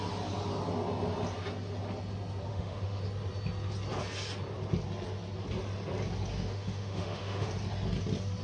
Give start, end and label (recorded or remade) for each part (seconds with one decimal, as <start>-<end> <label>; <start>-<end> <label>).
0.0-2.5 recorded; 2.5-3.0 remade; 3.0-6.3 recorded; 6.3-7.5 remade; 7.5-8.4 recorded